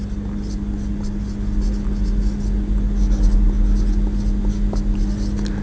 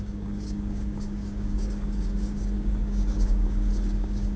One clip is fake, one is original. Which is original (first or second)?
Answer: first